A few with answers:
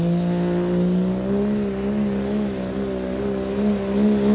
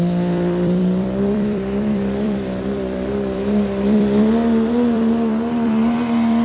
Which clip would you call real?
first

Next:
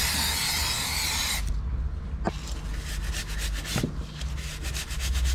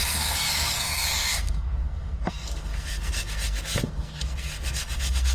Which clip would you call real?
first